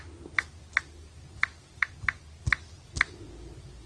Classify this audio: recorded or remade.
recorded